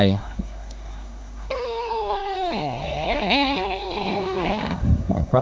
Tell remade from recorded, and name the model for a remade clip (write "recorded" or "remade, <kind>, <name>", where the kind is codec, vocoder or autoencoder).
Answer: remade, codec, SNAC